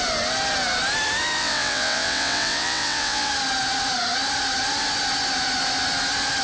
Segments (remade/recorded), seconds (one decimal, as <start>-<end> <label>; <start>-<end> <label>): 0.0-1.4 recorded; 1.4-3.3 remade; 3.3-6.4 recorded

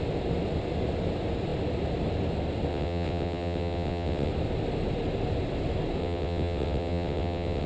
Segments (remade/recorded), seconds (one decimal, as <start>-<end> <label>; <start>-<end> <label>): 0.0-2.7 recorded; 2.7-4.3 remade; 4.3-6.0 recorded; 6.0-7.7 remade

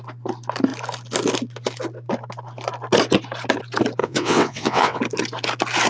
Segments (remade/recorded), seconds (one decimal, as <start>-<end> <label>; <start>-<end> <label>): 0.0-4.0 recorded; 4.0-5.0 remade; 5.0-5.9 recorded

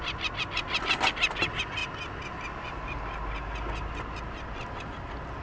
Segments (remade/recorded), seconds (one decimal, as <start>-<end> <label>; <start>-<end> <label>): 0.0-5.4 recorded

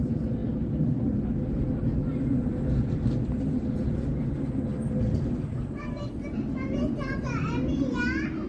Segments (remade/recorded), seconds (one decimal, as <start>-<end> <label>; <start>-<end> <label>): 0.0-8.5 recorded